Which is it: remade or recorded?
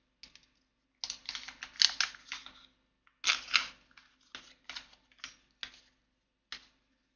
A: recorded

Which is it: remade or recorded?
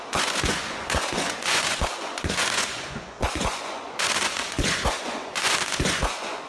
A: remade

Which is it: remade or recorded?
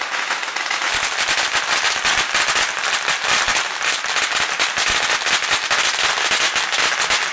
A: recorded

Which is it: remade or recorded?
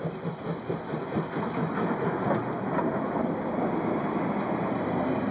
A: recorded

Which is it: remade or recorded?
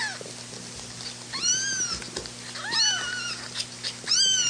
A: recorded